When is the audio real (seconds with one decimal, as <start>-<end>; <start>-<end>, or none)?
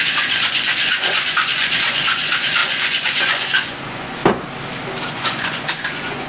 4.2-5.1